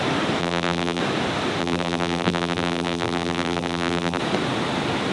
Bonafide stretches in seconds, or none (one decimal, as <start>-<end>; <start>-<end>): 0.0-0.4; 1.0-1.6; 4.2-5.1